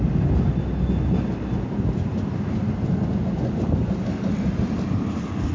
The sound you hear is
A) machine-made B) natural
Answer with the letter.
B